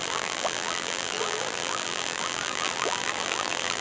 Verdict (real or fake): fake